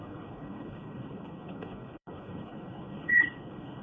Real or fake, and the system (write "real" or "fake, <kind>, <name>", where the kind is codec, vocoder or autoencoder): fake, codec, HILCodec